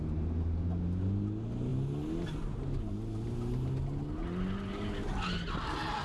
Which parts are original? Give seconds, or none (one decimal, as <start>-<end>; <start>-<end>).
0.0-6.0